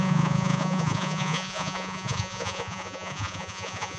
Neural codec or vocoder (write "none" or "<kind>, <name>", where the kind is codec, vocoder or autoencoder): vocoder, Vocos